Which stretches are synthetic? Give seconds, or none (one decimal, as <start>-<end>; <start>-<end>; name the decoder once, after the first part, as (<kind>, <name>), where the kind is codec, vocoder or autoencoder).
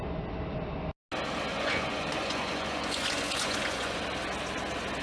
1.5-4.0 (vocoder, Vocos)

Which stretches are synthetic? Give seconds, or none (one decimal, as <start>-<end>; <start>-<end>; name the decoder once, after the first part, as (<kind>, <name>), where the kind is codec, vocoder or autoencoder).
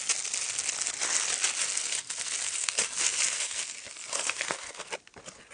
1.6-4.9 (codec, SNAC)